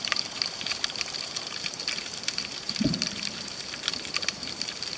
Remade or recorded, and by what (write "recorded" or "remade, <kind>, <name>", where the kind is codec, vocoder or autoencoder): remade, vocoder, BigVGAN v2